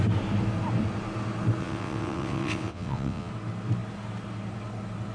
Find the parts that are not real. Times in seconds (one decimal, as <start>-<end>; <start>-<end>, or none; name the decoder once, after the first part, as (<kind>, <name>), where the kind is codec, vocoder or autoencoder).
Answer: 1.6-3.3 (vocoder, WaveNeXt)